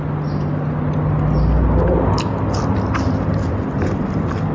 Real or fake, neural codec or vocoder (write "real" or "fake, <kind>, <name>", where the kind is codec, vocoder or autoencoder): real